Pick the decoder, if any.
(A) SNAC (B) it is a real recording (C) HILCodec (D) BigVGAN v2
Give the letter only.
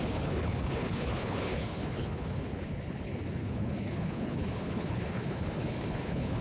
C